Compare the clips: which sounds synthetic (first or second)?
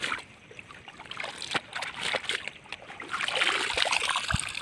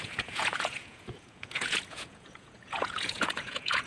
second